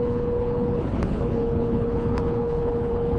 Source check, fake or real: fake